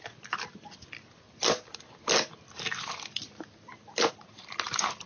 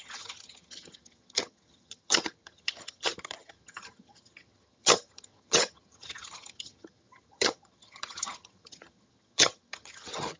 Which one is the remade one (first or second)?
second